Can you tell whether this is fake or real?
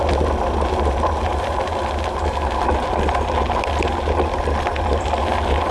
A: real